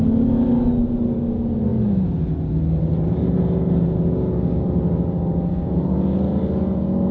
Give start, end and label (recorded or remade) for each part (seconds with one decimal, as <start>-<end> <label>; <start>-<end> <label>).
0.0-7.1 recorded